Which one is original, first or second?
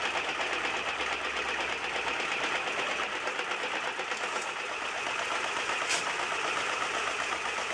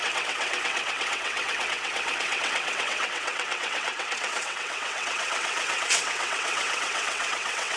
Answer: first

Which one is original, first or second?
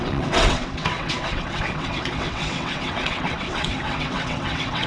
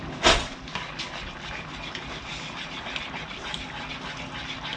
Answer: second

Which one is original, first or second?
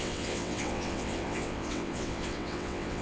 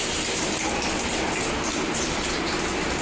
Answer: second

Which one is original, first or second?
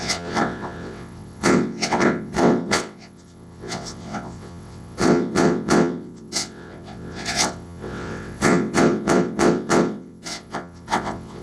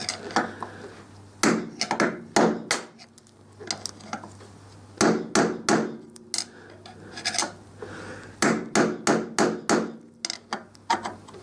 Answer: second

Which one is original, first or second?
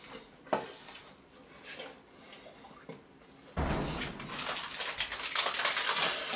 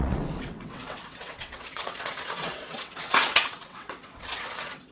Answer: first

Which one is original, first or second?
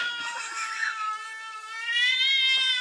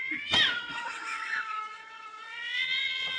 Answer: first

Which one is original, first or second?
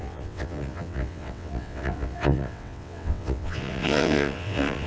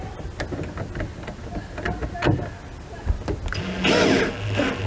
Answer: second